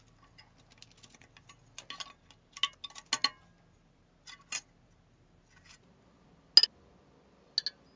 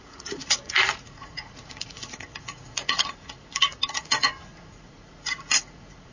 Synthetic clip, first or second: second